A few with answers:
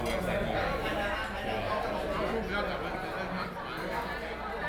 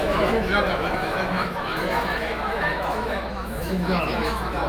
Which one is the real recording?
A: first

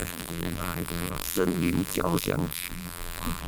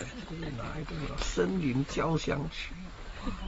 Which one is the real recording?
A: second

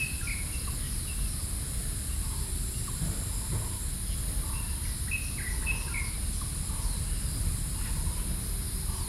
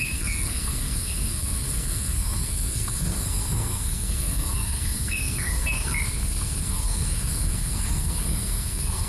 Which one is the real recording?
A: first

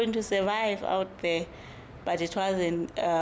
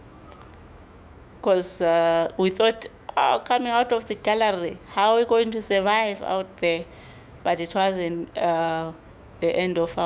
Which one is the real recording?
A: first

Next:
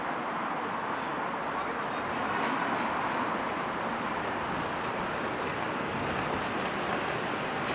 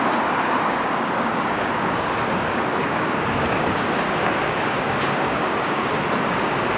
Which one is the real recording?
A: first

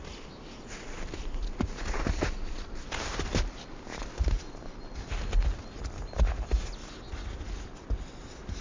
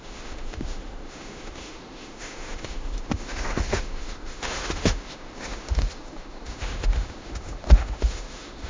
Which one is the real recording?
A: first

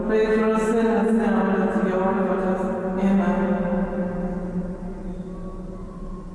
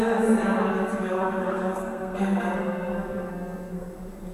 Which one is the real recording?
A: first